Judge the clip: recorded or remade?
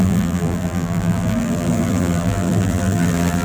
remade